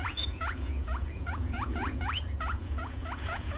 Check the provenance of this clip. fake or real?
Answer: fake